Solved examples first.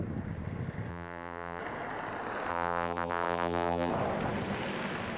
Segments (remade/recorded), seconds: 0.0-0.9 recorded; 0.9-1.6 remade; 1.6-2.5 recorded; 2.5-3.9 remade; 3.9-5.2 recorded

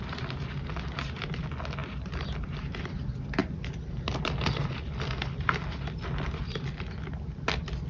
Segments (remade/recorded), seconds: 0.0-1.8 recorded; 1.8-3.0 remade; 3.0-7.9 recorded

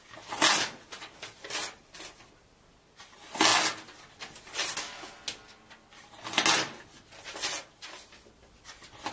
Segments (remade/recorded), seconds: 0.0-9.1 recorded

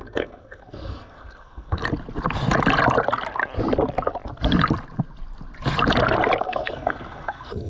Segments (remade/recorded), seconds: 0.0-1.8 remade; 1.8-6.4 recorded; 6.4-7.7 remade

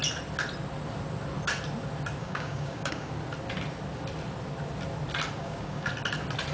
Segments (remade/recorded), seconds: 0.0-2.2 recorded; 2.2-3.1 remade; 3.1-5.4 recorded; 5.4-5.9 remade; 5.9-6.5 recorded

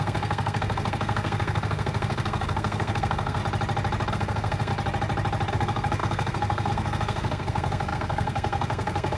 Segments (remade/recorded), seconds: 0.0-3.4 remade; 3.4-4.1 recorded; 4.1-4.7 remade; 4.7-5.5 recorded; 5.5-9.2 remade